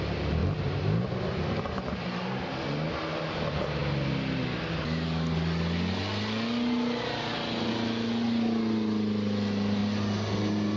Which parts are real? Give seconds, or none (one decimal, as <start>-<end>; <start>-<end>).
0.0-10.8